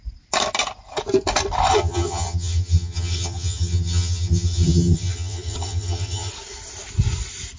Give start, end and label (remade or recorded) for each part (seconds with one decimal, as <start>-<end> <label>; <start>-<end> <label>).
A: 0.0-1.7 recorded; 1.7-6.3 remade; 6.3-7.6 recorded